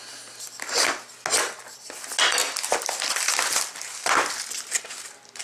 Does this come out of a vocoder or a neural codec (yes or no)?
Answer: no